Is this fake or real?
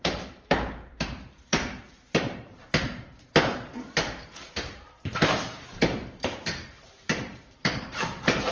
fake